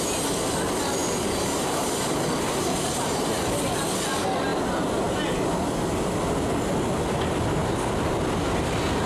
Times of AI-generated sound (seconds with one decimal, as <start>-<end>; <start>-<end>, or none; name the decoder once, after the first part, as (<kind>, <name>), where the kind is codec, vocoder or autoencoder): 1.0-3.3 (vocoder, BigVGAN v2)